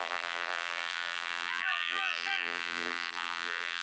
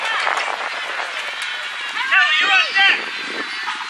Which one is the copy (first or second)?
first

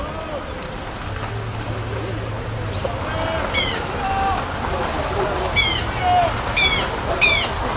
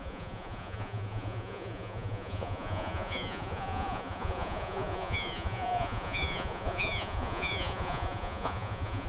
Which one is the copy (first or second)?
second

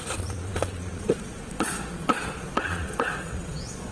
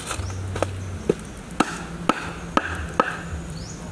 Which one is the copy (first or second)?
first